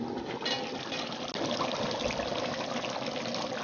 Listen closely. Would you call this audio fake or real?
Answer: real